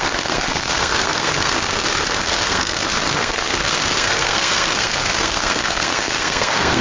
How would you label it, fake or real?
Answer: fake